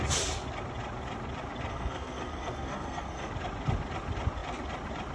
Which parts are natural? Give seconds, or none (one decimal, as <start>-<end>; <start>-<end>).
0.0-1.7; 3.3-5.1